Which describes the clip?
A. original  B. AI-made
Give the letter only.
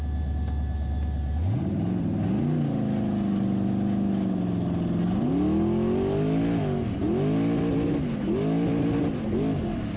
A